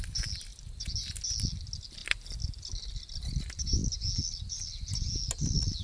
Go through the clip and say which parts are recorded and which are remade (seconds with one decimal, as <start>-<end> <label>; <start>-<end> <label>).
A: 0.0-5.8 recorded